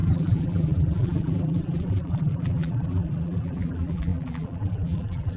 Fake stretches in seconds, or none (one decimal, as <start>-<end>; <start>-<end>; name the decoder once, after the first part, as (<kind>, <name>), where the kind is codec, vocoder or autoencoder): 0.0-5.4 (vocoder, BigVGAN v2)